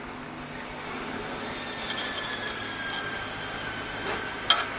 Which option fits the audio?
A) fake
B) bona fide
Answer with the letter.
B